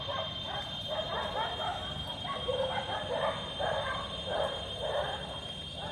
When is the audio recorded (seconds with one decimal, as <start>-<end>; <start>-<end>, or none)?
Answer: none